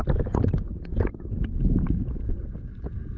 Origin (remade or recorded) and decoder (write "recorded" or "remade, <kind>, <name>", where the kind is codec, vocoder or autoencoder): recorded